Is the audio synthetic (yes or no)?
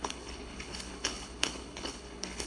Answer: yes